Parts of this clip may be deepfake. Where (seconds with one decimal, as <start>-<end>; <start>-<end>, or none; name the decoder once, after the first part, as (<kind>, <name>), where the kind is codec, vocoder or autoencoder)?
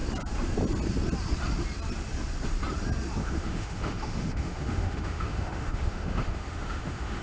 3.2-7.2 (autoencoder, DAC-VAE)